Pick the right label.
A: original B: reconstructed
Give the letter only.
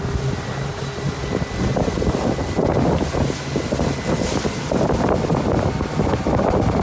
A